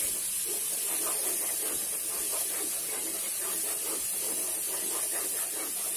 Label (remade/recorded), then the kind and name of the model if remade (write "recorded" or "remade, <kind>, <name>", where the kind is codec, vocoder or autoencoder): recorded